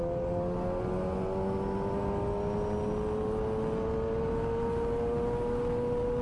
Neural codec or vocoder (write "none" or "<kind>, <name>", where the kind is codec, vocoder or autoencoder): none